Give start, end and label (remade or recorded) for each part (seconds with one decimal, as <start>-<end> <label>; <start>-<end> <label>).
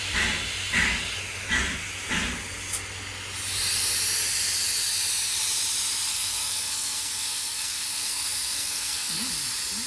0.0-6.1 recorded; 6.1-9.3 remade; 9.3-9.9 recorded